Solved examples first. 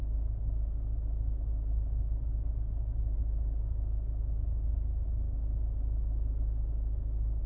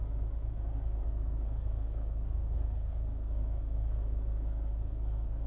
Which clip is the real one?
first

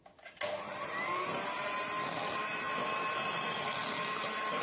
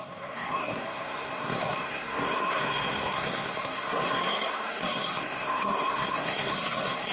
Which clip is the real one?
first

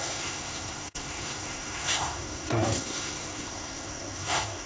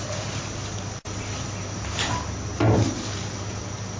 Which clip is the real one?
second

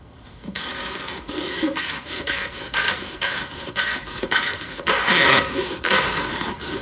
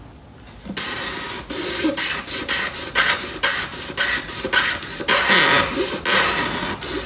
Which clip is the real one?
second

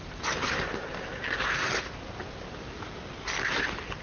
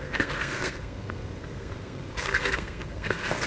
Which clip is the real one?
first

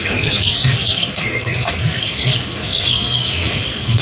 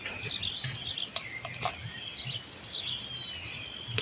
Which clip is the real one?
second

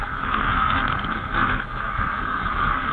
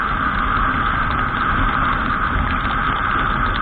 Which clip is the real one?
second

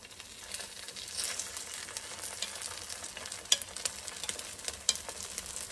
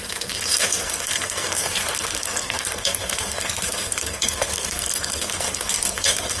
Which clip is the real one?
first